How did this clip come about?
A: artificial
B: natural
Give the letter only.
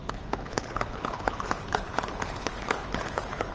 A